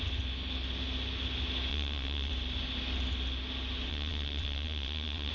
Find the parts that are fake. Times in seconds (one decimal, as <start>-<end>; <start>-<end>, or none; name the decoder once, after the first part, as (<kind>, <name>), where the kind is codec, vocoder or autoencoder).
1.7-2.3 (vocoder, WaveNeXt); 3.9-5.3